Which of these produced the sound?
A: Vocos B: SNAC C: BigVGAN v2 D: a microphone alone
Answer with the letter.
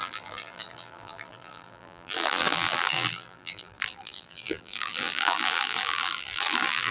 C